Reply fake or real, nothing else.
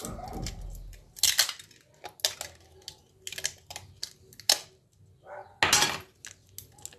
real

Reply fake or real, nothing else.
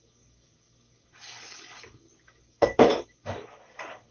fake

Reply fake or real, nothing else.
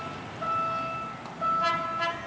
real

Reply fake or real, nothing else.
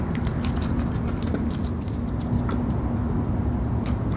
real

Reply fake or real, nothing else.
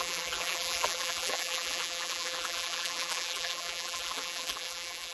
fake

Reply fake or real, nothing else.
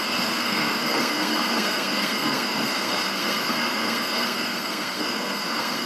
fake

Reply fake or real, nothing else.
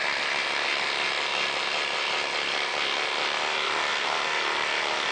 real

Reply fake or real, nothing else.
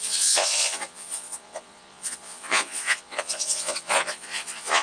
fake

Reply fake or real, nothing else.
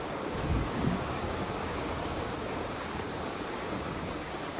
fake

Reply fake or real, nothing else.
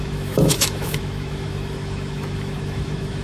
fake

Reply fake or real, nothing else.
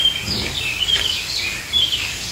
fake